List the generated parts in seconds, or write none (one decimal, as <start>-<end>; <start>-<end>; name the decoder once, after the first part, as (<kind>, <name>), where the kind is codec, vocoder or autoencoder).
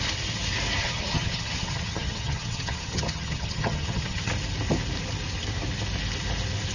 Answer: 0.8-4.3 (vocoder, HiFi-GAN)